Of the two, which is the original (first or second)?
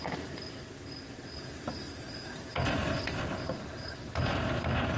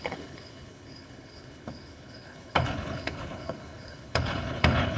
first